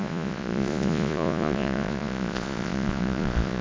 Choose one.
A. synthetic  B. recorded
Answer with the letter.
A